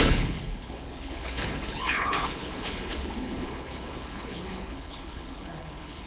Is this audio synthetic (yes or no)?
yes